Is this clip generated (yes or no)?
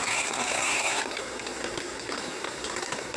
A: yes